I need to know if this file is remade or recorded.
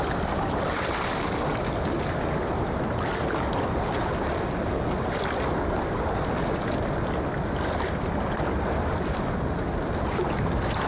recorded